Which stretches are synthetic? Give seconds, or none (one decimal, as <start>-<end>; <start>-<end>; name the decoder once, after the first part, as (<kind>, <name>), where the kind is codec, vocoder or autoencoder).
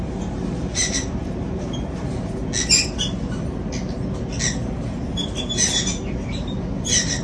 0.0-2.4 (vocoder, BigVGAN v2); 4.7-7.2